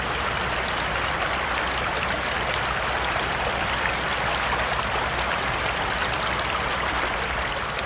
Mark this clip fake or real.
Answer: real